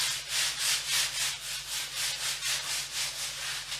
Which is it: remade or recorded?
recorded